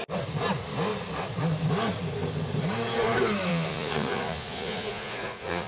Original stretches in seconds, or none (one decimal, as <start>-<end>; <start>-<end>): 0.0-3.5